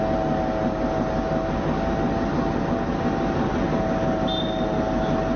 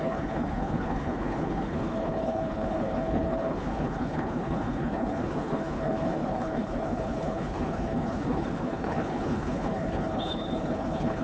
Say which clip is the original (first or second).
first